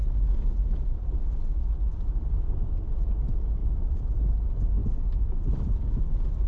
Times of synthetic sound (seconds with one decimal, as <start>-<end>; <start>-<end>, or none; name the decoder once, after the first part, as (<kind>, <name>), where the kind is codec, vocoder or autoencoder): 1.9-2.5 (vocoder, BigVGAN v2); 3.6-4.3